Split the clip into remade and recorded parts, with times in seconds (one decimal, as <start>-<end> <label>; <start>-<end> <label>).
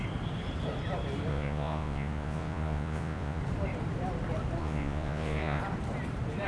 0.0-1.3 recorded; 1.3-3.4 remade; 3.4-4.6 recorded; 4.6-5.6 remade; 5.6-6.5 recorded